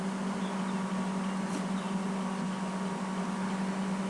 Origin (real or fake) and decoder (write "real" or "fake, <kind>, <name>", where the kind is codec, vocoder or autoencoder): real